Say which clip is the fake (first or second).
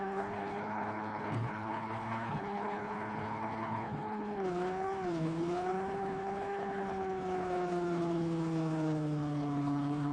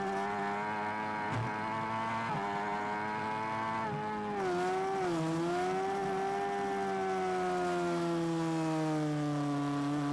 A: first